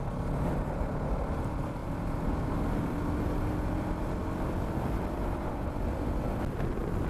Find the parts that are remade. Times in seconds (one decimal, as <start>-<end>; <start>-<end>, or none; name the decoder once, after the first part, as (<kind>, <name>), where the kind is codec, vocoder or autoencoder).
1.8-2.6 (vocoder, BigVGAN v2)